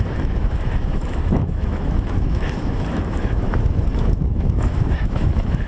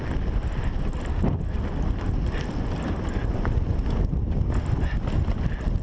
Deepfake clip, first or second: first